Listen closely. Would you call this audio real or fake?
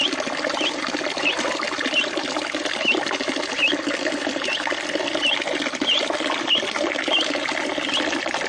real